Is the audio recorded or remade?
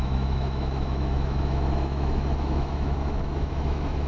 remade